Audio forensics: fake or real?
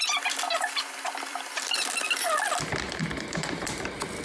fake